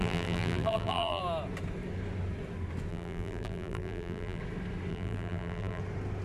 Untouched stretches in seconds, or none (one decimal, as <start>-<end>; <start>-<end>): 1.2-2.9; 4.4-4.9; 5.8-6.2